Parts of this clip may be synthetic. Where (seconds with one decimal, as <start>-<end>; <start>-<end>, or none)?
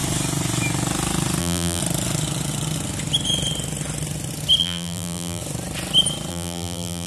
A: 1.4-1.8; 4.6-5.4; 6.3-7.1